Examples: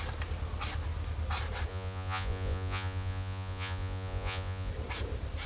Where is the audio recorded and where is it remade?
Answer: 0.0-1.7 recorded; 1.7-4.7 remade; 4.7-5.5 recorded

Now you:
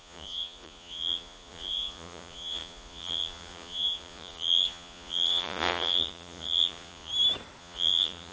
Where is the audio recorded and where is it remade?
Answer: 0.0-7.1 remade; 7.1-7.6 recorded; 7.6-8.3 remade